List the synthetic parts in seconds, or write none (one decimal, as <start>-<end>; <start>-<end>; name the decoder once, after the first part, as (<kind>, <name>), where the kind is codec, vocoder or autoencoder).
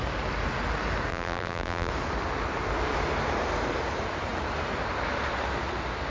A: 1.1-1.9 (vocoder, BigVGAN v2)